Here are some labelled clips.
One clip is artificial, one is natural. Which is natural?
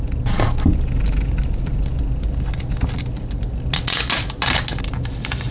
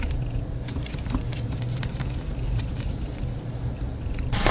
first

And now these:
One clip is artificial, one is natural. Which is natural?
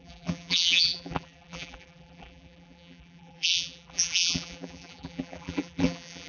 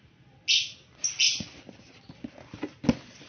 second